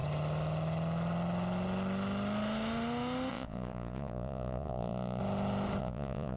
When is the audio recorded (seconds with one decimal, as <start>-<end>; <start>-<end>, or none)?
0.0-3.3; 5.2-5.8